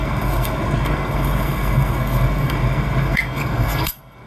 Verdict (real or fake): fake